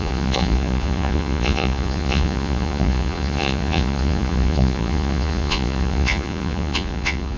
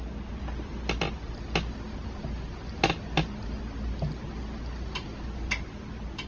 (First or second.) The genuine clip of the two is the second